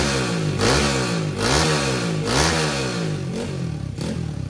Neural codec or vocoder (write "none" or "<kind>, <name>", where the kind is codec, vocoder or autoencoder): none